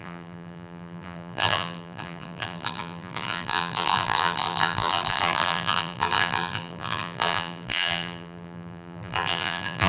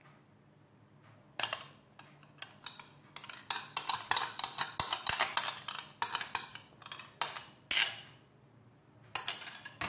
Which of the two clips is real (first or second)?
second